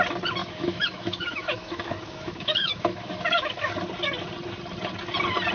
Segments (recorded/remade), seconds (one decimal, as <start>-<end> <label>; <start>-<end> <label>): 0.0-0.4 recorded; 0.4-3.7 remade; 3.7-5.5 recorded